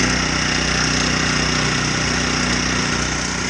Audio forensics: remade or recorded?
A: recorded